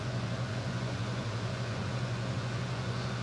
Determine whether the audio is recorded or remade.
remade